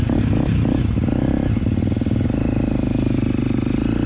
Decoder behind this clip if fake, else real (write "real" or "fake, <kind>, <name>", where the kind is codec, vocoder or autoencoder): real